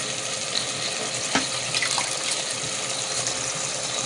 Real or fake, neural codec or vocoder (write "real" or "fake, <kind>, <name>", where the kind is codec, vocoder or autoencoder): real